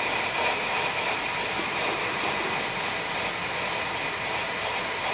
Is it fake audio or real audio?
real